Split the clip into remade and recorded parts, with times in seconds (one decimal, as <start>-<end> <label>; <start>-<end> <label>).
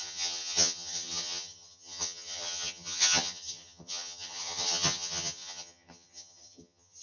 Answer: 0.0-7.0 remade